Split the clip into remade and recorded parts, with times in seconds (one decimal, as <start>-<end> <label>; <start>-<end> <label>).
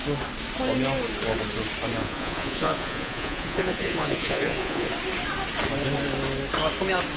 0.0-2.0 recorded; 2.0-4.9 remade; 4.9-7.2 recorded